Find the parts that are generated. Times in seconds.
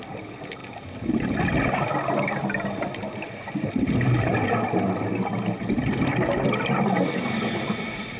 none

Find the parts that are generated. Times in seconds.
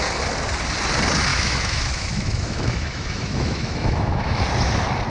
1.3-4.4 (autoencoder, DAC-VAE)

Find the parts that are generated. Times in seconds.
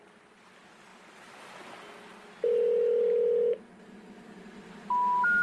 none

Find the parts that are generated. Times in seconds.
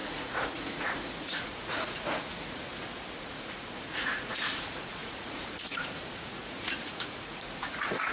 0.0-2.7 (vocoder, Vocos); 3.2-8.1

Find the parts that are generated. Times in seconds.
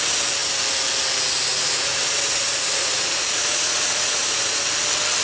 1.5-4.6 (vocoder, Vocos)